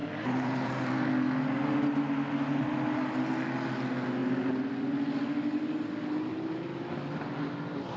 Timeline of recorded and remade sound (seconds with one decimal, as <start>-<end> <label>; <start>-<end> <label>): 0.0-1.1 remade; 1.1-8.0 recorded